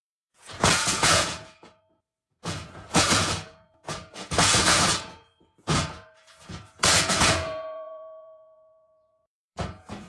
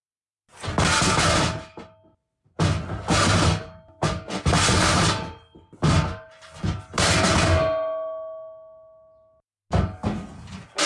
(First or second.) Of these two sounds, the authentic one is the second